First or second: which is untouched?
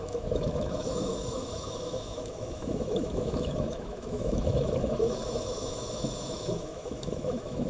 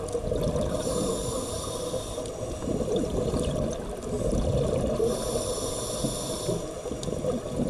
second